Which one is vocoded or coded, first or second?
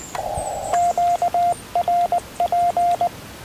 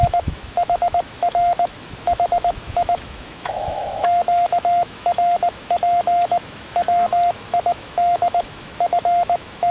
second